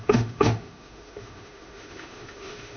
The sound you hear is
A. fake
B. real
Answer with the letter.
A